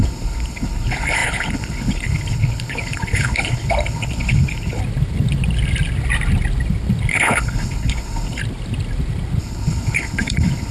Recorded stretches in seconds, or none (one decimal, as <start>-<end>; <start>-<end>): 4.8-7.1; 8.4-9.4